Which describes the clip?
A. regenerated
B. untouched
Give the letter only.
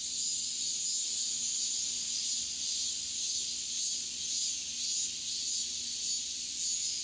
B